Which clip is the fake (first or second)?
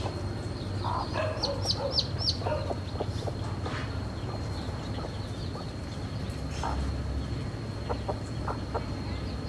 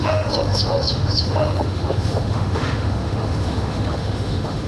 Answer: second